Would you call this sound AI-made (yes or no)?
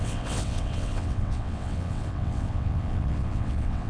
yes